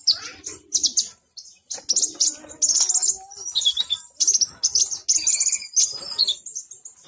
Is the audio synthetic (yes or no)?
no